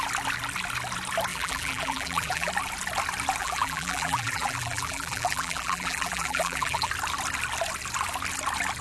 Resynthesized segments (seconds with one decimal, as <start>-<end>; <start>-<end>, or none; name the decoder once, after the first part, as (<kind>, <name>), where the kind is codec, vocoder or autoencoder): 1.3-2.5 (vocoder, BigVGAN v2); 3.4-6.9